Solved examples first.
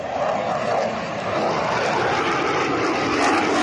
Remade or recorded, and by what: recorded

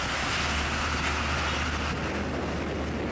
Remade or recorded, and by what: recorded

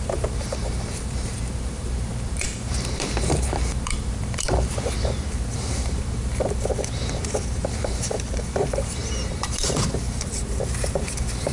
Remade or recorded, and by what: remade, vocoder, BigVGAN v2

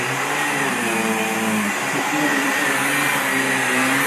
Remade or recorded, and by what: recorded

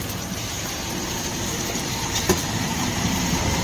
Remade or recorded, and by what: remade, vocoder, BigVGAN v2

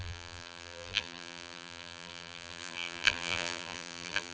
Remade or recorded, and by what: remade, vocoder, BigVGAN v2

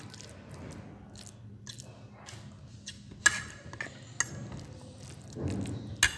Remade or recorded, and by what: recorded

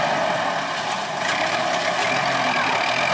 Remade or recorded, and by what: recorded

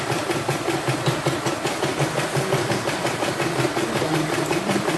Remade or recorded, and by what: remade, vocoder, BigVGAN v2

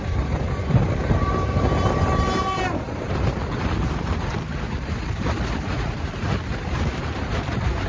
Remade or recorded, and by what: remade, vocoder, BigVGAN v2